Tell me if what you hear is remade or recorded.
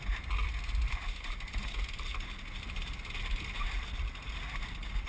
recorded